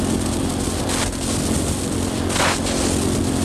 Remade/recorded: recorded